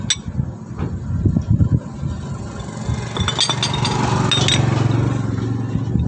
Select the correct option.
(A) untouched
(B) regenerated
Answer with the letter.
A